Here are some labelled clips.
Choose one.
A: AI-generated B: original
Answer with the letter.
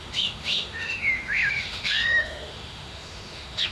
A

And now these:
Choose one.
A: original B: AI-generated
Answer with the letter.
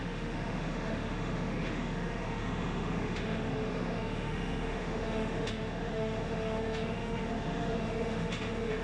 B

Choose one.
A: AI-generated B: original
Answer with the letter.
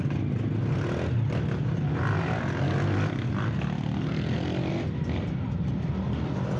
B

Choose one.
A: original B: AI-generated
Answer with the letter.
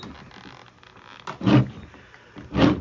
A